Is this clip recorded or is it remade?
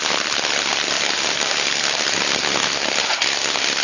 recorded